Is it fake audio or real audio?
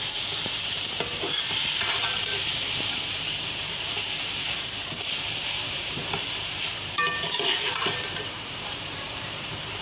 fake